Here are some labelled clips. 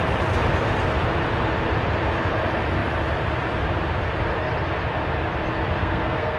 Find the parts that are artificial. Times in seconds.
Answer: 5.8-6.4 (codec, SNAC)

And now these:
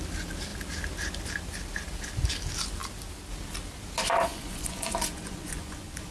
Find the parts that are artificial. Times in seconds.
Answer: 4.3-6.1 (vocoder, Vocos)

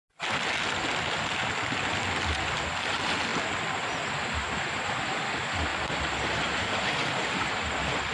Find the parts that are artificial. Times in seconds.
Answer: 5.7-7.6 (vocoder, BigVGAN v2)

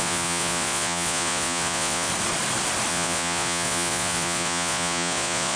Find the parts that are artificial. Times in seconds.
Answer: 0.0-2.1 (vocoder, Vocos); 2.9-5.6

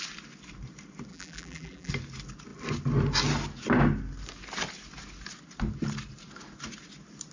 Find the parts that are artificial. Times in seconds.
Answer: 1.1-1.9 (vocoder, BigVGAN v2)

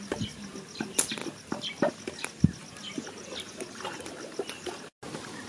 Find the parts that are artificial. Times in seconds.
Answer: none

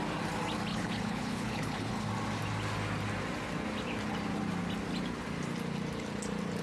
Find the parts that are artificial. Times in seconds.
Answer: 0.7-1.9 (codec, HILCodec)

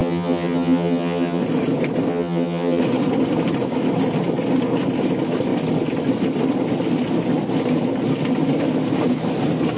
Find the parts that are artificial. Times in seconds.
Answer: 0.0-1.4 (vocoder, HiFi-GAN); 2.1-2.8